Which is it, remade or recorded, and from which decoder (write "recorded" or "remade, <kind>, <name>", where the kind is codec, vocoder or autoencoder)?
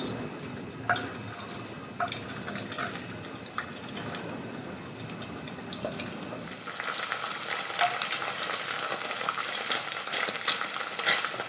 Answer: recorded